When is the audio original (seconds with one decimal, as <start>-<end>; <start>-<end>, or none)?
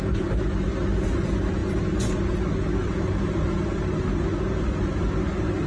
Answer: 0.0-5.7